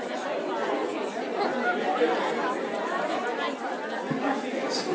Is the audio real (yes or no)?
yes